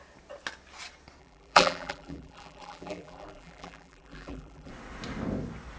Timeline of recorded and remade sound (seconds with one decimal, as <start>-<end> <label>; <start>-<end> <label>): 0.0-1.2 recorded; 1.2-4.7 remade; 4.7-5.8 recorded